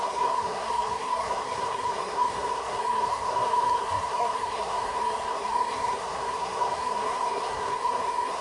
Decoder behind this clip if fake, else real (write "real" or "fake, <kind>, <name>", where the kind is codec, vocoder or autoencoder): fake, codec, SNAC